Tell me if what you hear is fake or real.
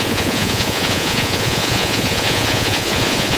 fake